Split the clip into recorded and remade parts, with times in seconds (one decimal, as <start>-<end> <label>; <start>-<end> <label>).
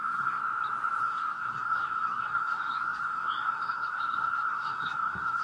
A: 0.0-0.4 remade; 0.4-1.0 recorded; 1.0-5.4 remade